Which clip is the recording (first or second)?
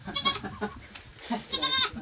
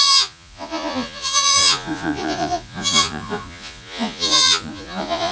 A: first